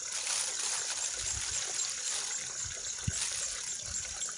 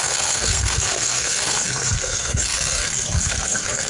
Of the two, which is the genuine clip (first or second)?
first